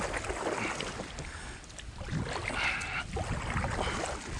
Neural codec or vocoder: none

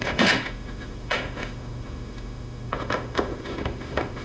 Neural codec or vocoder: autoencoder, DAC-VAE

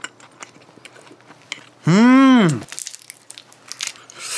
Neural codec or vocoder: none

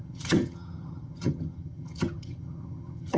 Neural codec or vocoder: vocoder, HiFi-GAN